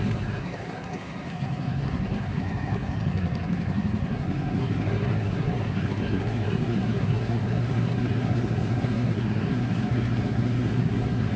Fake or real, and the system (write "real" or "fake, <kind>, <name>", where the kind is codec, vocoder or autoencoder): fake, codec, SNAC